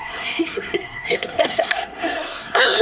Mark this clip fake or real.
fake